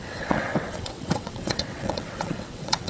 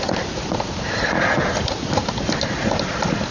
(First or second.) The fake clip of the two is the first